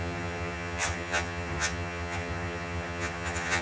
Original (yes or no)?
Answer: no